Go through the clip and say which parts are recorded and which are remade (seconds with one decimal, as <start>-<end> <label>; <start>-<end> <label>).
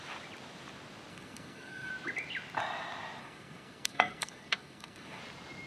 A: 0.0-1.1 recorded; 1.1-1.9 remade; 1.9-3.2 recorded; 3.2-5.2 remade; 5.2-5.7 recorded